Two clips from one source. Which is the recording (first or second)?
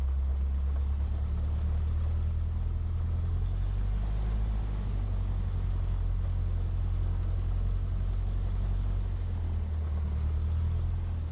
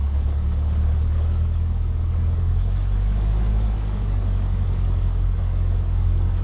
first